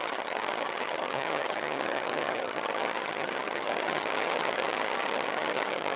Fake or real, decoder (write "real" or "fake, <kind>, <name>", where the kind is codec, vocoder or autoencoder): fake, vocoder, HiFi-GAN